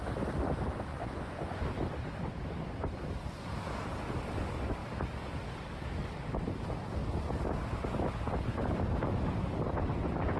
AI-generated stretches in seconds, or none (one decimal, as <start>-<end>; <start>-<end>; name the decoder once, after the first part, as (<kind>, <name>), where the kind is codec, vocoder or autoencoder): 0.9-1.7 (vocoder, Vocos)